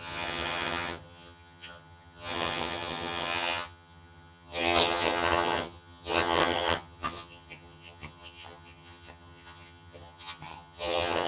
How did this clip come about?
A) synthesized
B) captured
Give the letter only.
A